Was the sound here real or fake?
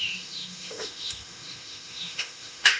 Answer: fake